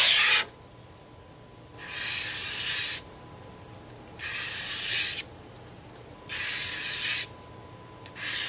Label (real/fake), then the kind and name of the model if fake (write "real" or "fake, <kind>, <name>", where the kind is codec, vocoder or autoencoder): real